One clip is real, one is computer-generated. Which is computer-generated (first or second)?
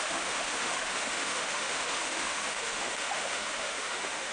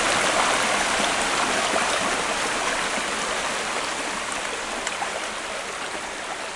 first